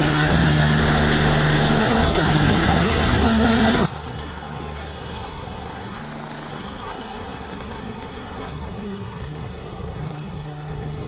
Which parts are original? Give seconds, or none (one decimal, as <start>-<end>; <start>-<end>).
0.8-1.8; 6.0-6.5